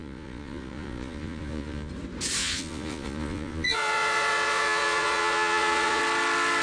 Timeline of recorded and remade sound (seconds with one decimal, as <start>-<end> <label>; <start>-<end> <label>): 0.0-1.9 remade; 1.9-2.4 recorded; 2.4-6.0 remade; 6.0-6.6 recorded